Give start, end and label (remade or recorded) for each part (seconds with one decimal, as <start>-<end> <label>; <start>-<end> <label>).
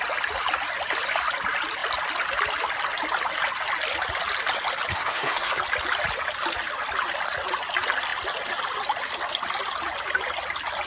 0.0-4.9 recorded; 4.9-5.6 remade; 5.6-10.9 recorded